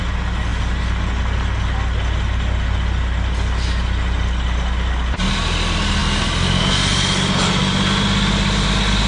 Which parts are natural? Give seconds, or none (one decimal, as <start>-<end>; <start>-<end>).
0.0-9.1